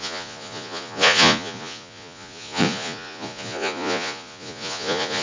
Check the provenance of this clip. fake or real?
fake